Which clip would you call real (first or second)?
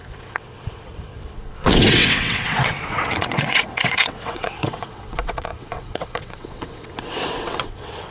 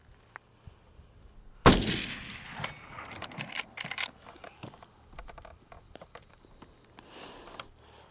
second